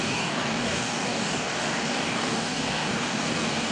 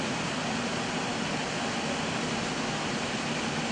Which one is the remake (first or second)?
first